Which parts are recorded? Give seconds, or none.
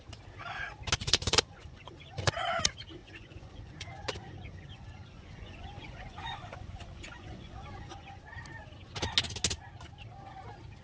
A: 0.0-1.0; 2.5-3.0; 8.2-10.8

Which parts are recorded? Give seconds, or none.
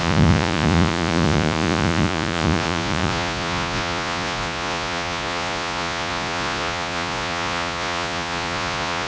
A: none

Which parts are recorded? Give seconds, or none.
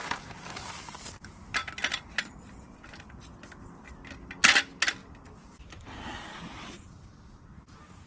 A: 0.0-5.0; 5.6-8.1